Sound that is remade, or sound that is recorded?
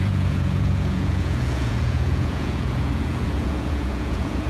remade